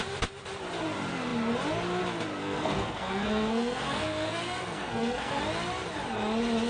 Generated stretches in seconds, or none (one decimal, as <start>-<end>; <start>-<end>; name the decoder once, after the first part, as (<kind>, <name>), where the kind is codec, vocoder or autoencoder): 2.4-5.4 (codec, SNAC)